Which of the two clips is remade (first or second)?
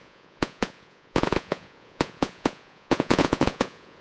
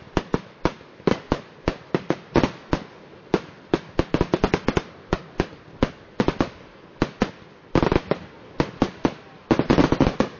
first